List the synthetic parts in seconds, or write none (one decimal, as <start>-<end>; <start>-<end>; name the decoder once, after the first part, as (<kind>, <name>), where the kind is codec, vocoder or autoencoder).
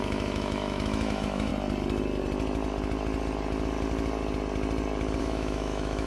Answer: 0.0-1.5 (autoencoder, DAC-VAE); 5.2-6.1